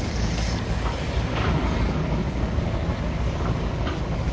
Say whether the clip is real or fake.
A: fake